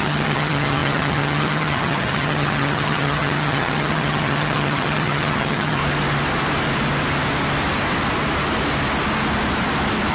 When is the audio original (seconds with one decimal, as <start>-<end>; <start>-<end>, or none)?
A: 5.8-10.1